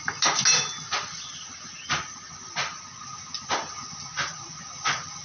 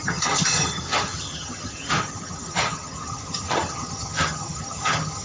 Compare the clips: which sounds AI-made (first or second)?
second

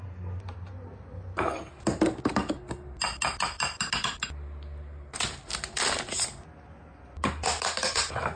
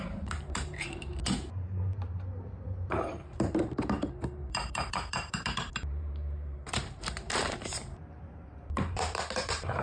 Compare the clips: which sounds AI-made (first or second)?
second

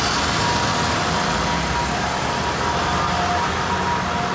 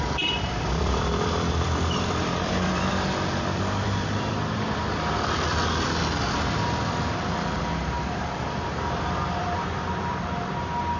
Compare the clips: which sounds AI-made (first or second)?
second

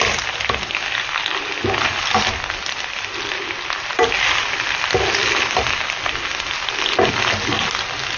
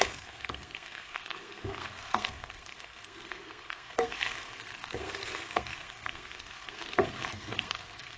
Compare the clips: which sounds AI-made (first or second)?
second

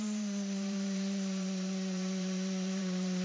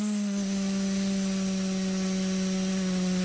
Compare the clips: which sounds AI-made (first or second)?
first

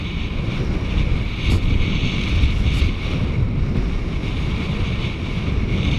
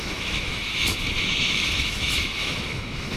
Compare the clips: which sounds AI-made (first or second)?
second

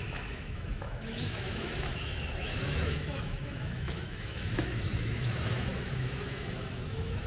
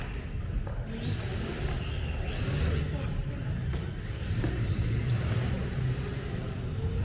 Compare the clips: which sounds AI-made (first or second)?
first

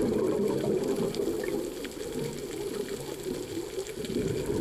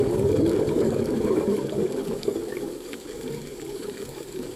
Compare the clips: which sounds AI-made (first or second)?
second